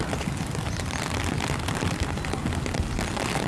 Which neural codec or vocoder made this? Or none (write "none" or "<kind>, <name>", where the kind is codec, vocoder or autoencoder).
none